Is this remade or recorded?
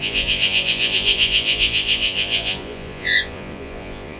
remade